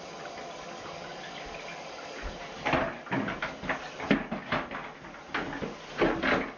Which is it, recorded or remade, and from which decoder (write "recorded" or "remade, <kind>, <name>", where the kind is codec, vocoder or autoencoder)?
recorded